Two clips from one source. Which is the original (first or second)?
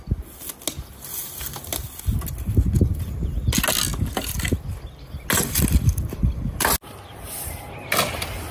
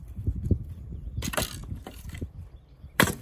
first